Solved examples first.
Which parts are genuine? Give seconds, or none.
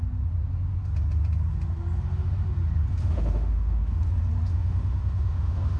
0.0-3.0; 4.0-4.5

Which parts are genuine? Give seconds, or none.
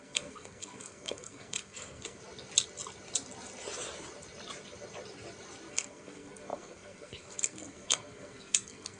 2.2-5.7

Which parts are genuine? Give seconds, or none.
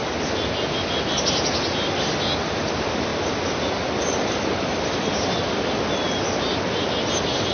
0.0-7.5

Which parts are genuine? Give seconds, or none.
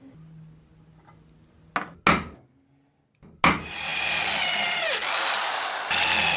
0.0-6.4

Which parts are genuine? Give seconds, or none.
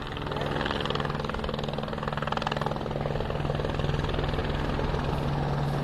0.0-5.8